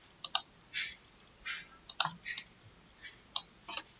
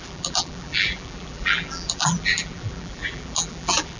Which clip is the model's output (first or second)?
second